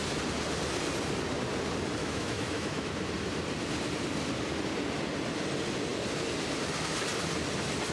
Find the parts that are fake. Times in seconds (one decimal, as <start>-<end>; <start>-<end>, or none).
2.0-2.9